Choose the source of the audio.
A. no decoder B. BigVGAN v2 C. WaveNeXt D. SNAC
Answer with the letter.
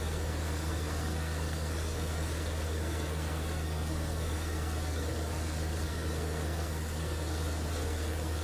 D